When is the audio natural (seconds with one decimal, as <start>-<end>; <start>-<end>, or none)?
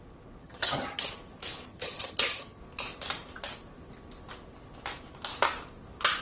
0.0-0.4; 1.1-1.7; 2.6-6.2